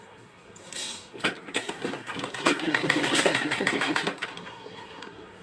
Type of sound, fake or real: fake